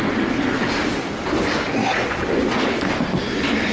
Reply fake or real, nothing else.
real